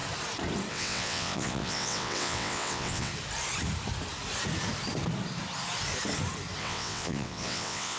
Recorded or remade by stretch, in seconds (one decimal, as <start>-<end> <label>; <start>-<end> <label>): 0.0-0.7 recorded; 0.7-3.1 remade; 3.1-6.6 recorded; 6.6-8.0 remade

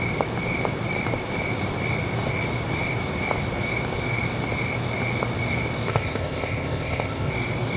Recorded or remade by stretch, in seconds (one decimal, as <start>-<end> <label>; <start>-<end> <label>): 0.0-5.9 recorded; 5.9-7.3 remade; 7.3-7.8 recorded

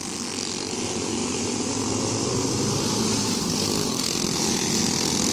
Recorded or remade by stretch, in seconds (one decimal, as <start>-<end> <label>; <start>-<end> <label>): 0.0-5.3 recorded

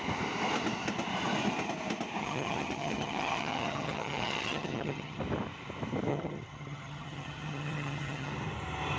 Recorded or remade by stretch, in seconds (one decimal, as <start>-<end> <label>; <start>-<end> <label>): 0.0-2.2 recorded; 2.2-5.2 remade; 5.2-6.1 recorded; 6.1-8.3 remade; 8.3-9.0 recorded

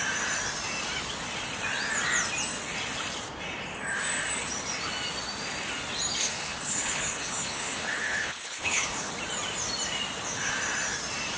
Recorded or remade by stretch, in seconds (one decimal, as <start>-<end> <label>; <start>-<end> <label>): 0.0-6.2 recorded; 6.2-9.1 remade; 9.1-11.4 recorded

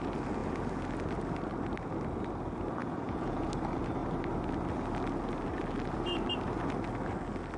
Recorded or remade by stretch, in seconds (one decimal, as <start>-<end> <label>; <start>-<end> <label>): 0.0-2.8 recorded; 2.8-3.5 remade; 3.5-7.6 recorded

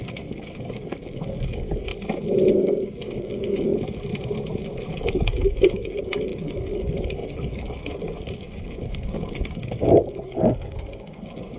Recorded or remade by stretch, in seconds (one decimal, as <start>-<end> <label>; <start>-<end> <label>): 0.0-1.9 remade; 1.9-2.5 recorded; 2.5-3.7 remade; 3.7-4.9 recorded; 4.9-11.6 remade